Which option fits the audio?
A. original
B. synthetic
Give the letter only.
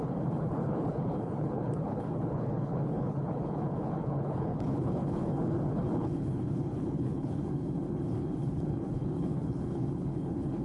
B